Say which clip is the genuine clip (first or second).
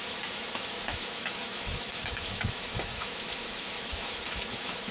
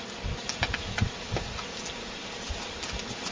second